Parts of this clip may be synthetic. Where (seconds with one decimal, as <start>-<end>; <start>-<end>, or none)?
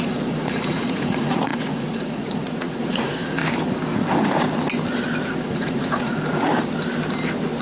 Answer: 0.0-3.4; 5.3-6.5